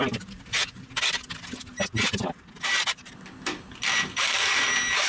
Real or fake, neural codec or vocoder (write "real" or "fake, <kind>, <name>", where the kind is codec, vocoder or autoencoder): real